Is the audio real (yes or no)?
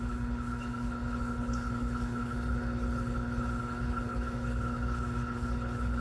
no